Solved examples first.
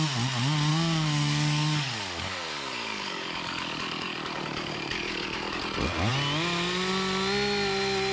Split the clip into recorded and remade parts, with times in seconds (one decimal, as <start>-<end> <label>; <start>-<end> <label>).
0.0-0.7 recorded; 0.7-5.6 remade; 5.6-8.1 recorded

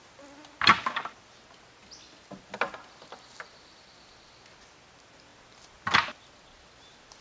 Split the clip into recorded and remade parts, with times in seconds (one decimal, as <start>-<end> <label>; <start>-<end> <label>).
0.0-7.2 recorded

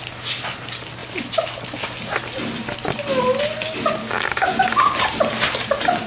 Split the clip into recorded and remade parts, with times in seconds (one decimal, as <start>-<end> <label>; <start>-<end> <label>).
0.0-4.0 recorded; 4.0-4.7 remade; 4.7-6.1 recorded

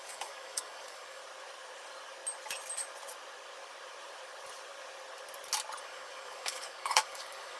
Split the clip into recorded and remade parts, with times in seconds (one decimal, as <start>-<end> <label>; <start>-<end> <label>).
0.0-1.2 remade; 1.2-5.8 recorded; 5.8-7.6 remade

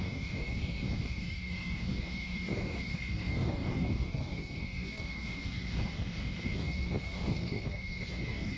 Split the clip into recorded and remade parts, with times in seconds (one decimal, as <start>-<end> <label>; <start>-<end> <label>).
0.0-8.6 remade